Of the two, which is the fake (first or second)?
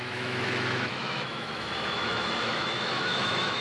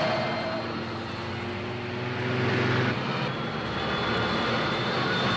first